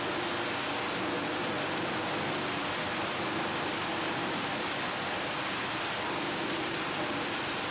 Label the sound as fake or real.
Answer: real